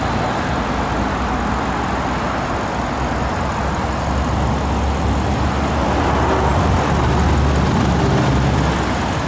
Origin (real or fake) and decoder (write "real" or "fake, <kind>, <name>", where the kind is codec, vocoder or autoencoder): real